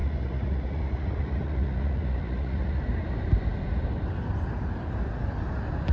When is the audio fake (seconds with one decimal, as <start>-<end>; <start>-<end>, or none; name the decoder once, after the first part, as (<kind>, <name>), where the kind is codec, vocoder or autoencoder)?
0.0-2.8 (vocoder, Vocos)